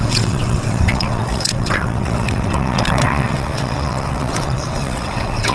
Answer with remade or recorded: remade